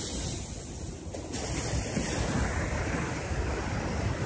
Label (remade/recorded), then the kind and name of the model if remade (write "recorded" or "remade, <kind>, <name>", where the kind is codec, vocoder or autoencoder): recorded